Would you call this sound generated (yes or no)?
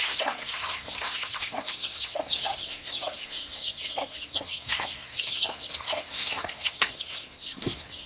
yes